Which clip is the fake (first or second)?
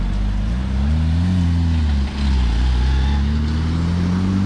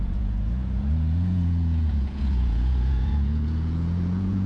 second